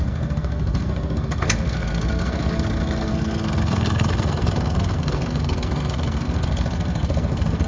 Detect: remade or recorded remade